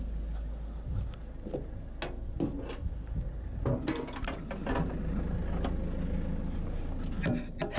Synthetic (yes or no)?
no